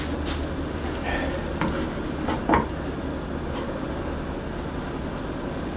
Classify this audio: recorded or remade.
recorded